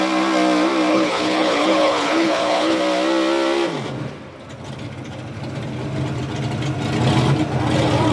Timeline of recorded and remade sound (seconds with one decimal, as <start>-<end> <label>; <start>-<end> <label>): 0.0-0.9 recorded; 0.9-2.8 remade; 2.8-8.1 recorded

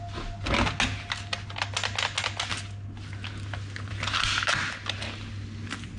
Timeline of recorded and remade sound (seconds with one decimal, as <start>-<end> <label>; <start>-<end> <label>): 0.0-6.0 recorded

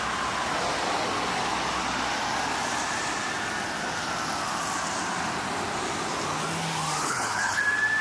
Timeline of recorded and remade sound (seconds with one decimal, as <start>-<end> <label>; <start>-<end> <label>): 0.0-7.0 recorded; 7.0-7.6 remade; 7.6-8.0 recorded